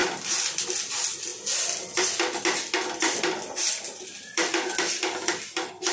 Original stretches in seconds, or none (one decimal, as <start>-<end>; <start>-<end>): 0.0-5.9